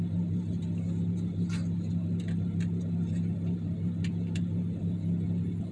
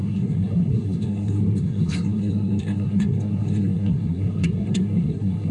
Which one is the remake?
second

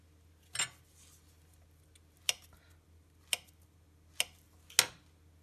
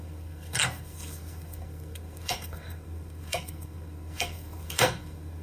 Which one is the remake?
second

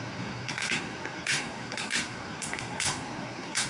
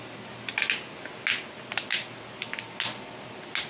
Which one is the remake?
first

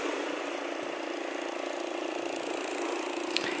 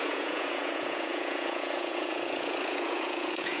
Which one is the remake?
second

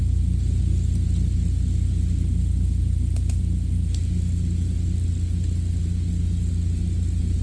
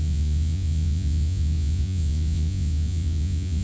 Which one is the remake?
second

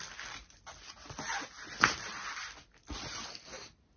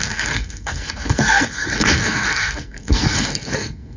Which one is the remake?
second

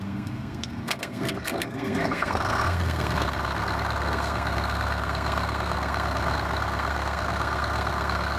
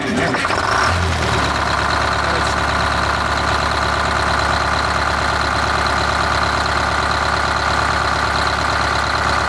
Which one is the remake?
first